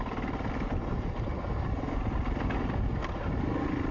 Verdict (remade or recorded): recorded